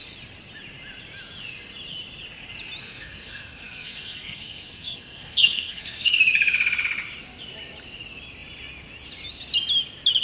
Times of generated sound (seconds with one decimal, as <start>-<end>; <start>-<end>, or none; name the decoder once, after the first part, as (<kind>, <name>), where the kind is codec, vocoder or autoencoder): 2.8-6.2 (codec, SNAC)